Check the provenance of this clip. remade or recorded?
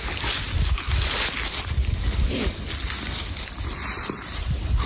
recorded